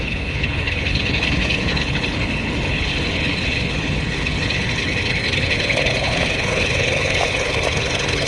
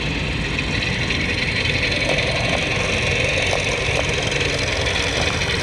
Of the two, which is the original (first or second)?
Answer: second